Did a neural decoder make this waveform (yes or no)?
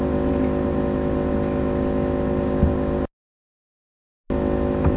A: no